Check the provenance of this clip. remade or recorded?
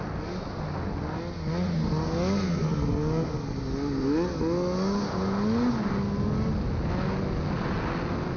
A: recorded